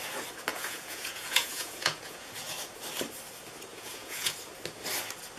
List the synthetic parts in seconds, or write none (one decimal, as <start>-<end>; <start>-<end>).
0.5-2.3; 3.7-4.3